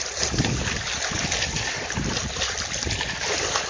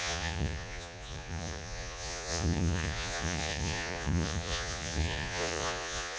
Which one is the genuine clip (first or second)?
first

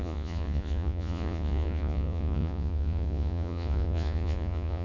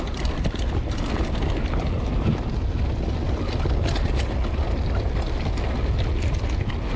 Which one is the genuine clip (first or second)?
second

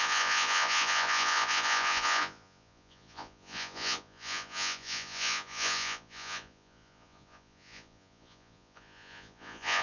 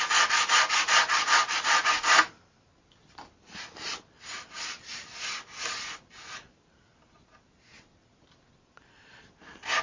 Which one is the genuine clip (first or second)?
second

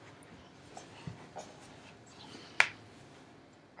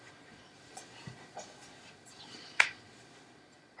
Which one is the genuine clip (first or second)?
first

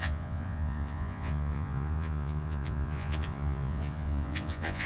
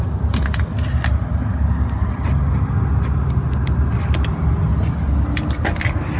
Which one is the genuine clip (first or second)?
second